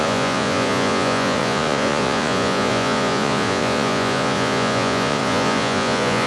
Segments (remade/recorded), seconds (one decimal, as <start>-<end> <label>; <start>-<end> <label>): 0.0-6.3 remade